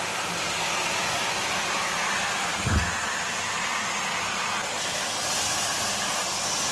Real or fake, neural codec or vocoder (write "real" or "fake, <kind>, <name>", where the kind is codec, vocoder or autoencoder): real